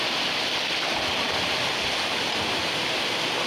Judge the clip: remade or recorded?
recorded